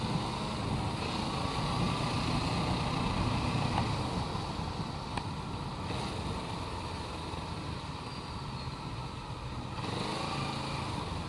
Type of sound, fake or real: real